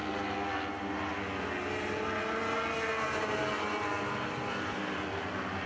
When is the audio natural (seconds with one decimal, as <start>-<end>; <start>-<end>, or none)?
0.0-5.7